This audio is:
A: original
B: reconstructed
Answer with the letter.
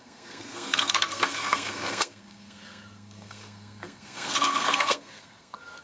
B